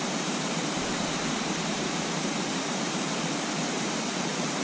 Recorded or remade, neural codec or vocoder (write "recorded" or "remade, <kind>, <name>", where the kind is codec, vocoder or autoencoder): remade, vocoder, BigVGAN v2